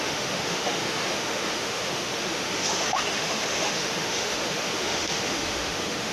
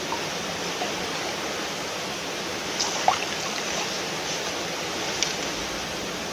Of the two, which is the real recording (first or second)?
second